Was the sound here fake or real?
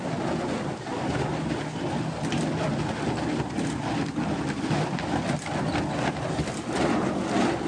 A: real